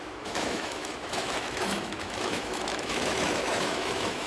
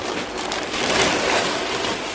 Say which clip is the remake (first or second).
first